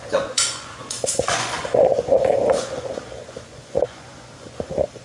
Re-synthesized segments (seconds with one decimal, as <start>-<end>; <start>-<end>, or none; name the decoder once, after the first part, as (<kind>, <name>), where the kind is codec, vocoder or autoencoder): 0.0-5.0 (vocoder, Vocos)